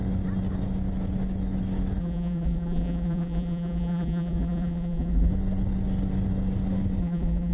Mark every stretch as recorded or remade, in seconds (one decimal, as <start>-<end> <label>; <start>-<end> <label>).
0.0-2.0 recorded; 2.0-5.3 remade; 5.3-7.0 recorded; 7.0-7.5 remade